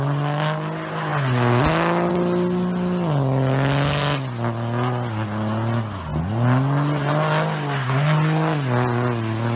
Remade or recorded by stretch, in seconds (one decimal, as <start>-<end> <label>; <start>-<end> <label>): 0.0-9.6 recorded